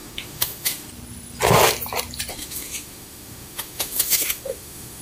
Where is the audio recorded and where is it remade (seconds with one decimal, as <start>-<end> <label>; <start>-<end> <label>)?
0.0-0.9 remade; 0.9-2.3 recorded; 2.3-5.0 remade